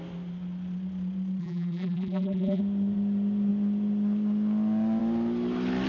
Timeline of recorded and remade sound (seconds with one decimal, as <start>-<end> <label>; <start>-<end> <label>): 0.0-1.4 recorded; 1.4-2.6 remade; 2.6-5.9 recorded